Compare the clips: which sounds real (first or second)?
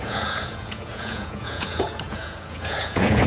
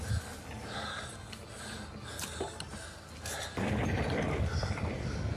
second